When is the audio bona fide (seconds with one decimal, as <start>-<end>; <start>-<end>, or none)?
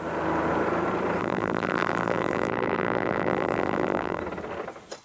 0.0-1.2; 4.2-5.0